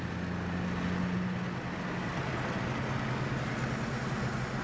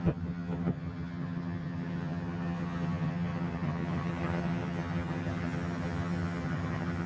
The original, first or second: first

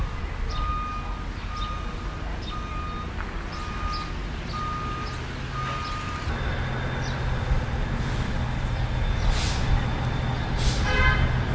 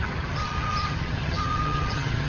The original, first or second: first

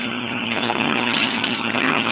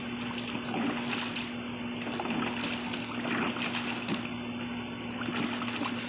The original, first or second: second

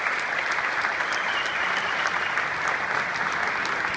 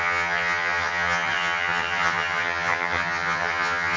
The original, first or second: first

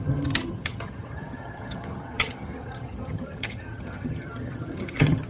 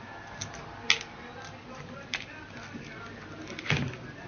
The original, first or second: second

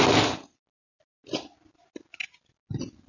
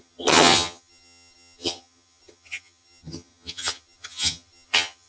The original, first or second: first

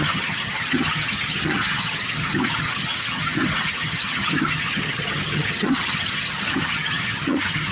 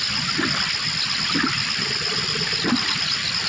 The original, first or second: second